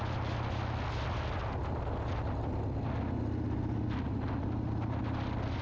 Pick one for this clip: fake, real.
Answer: real